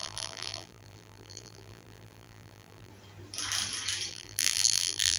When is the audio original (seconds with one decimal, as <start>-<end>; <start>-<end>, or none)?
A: 2.9-4.1